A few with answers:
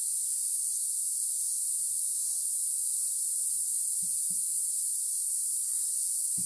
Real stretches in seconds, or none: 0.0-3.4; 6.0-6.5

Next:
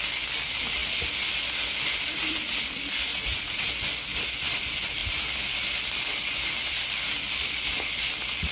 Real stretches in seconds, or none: 0.0-3.1; 3.7-8.5

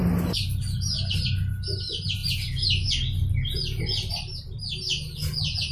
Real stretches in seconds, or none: 0.0-5.7

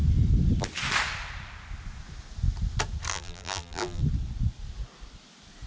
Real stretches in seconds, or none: 0.0-3.1; 4.0-5.7

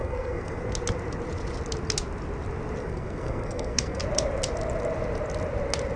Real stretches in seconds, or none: 0.6-2.8; 4.0-6.0

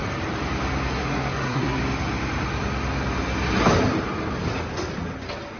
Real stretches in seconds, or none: 0.0-0.9; 1.8-5.6

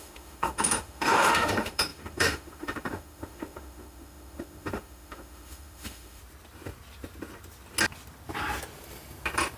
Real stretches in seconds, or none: 6.2-9.6